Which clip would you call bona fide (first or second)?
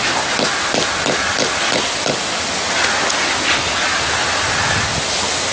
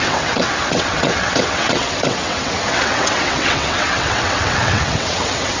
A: first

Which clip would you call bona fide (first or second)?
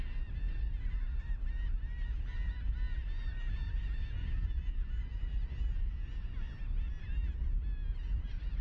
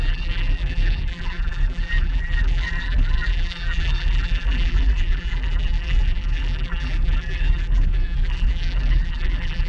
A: first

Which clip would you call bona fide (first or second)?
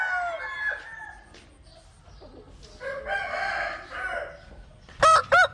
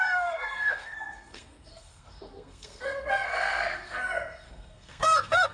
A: first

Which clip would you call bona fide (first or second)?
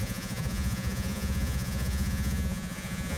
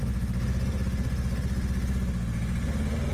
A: second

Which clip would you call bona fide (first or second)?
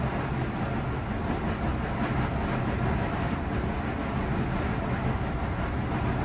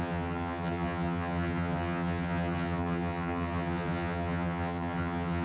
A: first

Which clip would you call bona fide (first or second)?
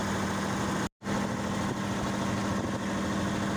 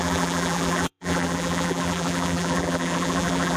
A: first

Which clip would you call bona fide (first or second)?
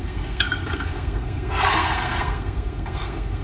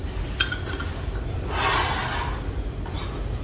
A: second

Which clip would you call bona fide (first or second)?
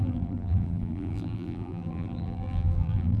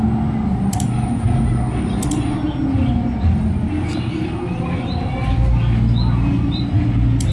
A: second